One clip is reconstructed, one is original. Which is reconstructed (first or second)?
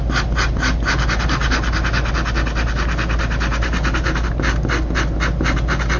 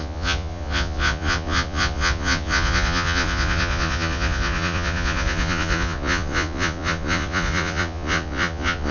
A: second